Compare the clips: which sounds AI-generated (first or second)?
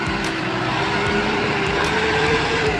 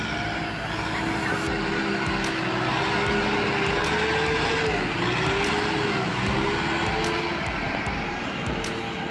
first